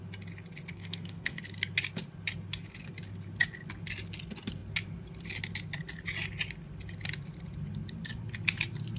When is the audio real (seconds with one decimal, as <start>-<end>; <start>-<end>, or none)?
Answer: 0.0-0.7; 1.4-9.0